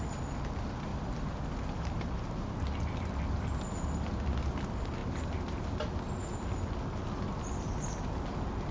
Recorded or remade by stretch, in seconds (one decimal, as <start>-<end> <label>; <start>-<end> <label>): 0.0-0.9 recorded; 0.9-2.0 remade; 2.0-8.7 recorded